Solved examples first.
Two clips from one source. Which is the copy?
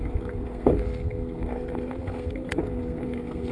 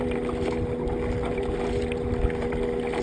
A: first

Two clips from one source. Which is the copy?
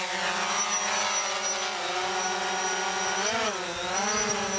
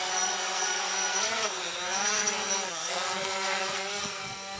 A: second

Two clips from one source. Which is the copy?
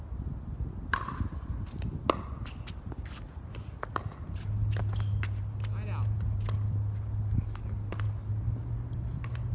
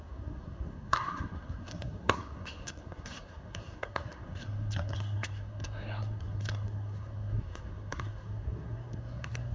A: second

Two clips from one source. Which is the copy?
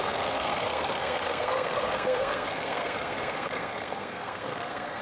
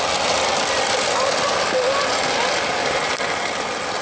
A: first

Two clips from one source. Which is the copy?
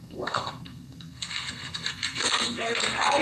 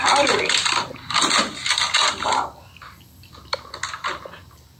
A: first